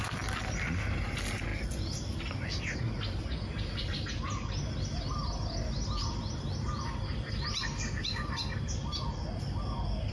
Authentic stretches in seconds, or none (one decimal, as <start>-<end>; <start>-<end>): 0.0-10.1